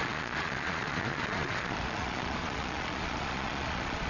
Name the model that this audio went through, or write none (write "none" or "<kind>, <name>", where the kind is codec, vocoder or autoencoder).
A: vocoder, Vocos